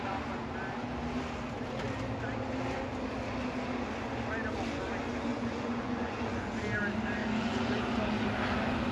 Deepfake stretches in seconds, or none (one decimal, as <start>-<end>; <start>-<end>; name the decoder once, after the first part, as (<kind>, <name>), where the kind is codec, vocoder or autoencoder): 5.3-6.5 (vocoder, Vocos); 7.2-7.8